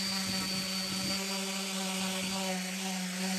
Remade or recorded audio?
recorded